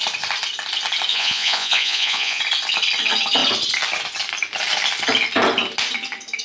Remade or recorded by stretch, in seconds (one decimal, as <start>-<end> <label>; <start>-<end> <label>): 0.0-1.1 recorded; 1.1-2.4 remade; 2.4-6.4 recorded